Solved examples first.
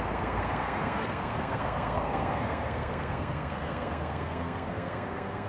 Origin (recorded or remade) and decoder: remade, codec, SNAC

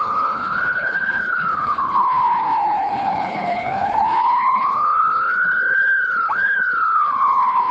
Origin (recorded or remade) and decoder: remade, codec, HILCodec